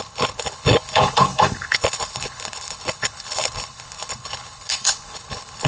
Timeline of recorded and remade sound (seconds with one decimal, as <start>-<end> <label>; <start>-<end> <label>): 0.0-5.7 remade